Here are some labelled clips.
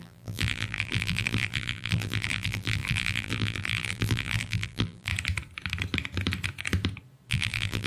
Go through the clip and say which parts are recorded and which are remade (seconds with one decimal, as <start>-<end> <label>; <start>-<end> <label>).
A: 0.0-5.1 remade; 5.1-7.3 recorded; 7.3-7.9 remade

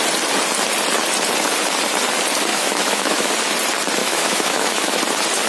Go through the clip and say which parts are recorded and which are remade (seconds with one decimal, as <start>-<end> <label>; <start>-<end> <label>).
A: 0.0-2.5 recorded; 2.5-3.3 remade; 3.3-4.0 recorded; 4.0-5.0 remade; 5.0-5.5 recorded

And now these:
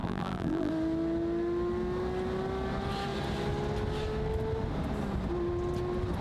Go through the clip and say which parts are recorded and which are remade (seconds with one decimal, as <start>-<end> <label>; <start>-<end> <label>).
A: 0.0-0.7 remade; 0.7-6.2 recorded

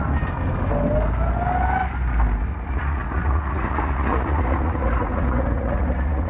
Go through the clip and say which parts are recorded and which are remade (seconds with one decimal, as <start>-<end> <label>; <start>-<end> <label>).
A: 0.0-2.5 recorded; 2.5-6.3 remade

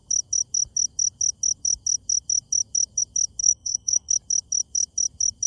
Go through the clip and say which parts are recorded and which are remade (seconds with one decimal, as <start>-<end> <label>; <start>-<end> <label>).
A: 0.0-3.4 recorded; 3.4-4.1 remade; 4.1-5.5 recorded

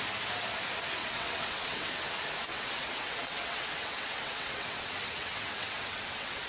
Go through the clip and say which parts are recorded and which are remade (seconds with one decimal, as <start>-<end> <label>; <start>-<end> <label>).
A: 0.0-1.0 recorded; 1.0-2.1 remade; 2.1-2.5 recorded; 2.5-6.5 remade